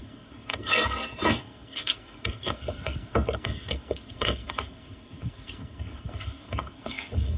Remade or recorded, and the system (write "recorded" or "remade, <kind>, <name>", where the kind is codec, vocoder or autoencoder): remade, codec, SNAC